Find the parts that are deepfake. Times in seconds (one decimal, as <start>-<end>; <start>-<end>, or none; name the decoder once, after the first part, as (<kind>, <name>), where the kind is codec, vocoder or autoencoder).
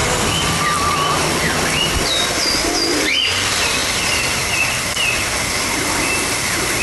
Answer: 0.0-0.6 (vocoder, BigVGAN v2)